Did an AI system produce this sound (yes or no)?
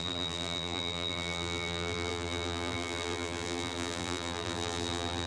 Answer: yes